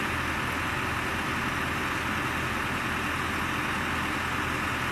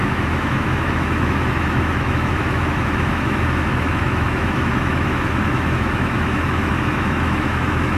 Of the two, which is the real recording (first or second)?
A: first